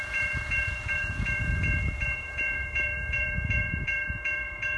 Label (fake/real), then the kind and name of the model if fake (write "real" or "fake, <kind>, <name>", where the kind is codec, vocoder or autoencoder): fake, vocoder, Vocos